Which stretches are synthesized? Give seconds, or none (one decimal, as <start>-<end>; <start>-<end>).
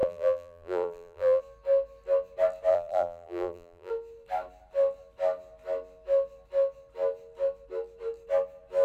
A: 0.0-1.4; 2.7-3.9